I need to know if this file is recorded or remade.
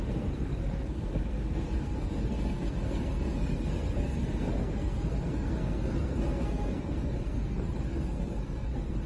remade